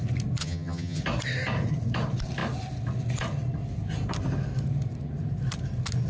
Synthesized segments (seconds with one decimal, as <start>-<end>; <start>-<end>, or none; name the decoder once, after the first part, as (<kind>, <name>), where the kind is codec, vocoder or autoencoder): 0.4-1.0 (vocoder, HiFi-GAN)